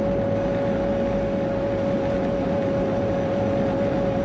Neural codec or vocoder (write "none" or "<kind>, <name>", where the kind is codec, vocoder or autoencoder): none